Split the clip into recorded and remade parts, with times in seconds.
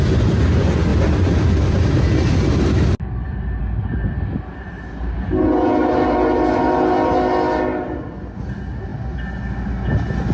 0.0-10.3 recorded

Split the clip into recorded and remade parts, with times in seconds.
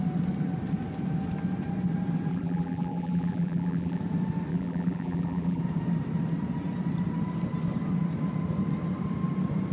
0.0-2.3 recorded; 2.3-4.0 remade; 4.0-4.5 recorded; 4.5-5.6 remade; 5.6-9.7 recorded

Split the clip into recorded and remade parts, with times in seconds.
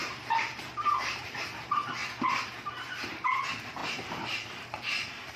0.0-2.0 remade; 2.0-3.4 recorded; 3.4-5.4 remade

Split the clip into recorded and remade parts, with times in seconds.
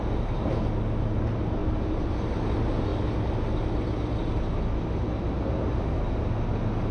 0.0-1.6 recorded; 1.6-2.4 remade; 2.4-6.9 recorded